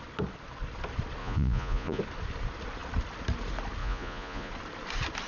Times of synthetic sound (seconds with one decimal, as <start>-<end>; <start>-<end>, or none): 1.2-2.0; 3.8-4.5